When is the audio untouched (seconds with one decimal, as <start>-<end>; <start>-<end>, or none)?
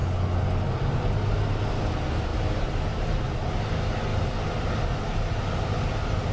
0.0-6.3